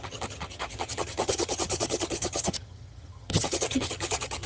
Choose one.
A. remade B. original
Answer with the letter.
A